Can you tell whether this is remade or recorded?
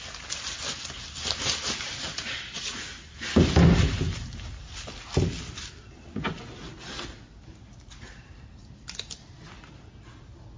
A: recorded